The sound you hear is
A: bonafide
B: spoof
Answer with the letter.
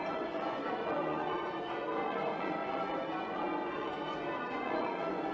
B